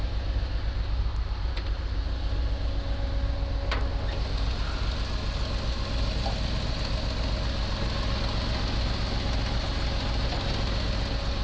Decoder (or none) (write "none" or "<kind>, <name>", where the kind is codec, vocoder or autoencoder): none